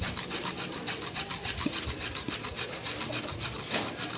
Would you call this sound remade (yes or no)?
no